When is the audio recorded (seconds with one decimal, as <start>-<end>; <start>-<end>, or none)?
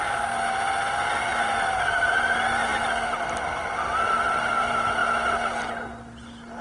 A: 0.0-6.6